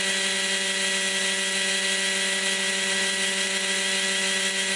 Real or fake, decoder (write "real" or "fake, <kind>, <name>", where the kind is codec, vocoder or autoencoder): real